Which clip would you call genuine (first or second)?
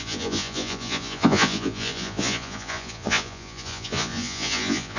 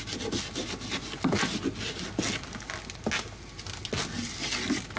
second